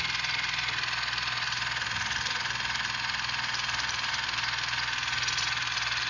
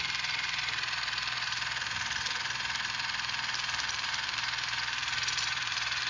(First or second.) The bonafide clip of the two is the first